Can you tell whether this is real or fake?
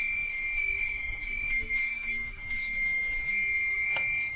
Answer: fake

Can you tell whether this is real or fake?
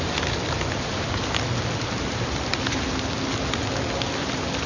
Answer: real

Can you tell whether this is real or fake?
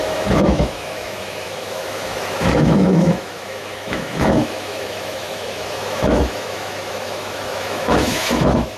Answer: fake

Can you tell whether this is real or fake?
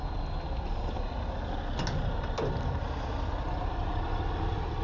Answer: real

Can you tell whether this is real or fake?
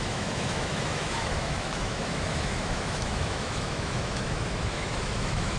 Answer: fake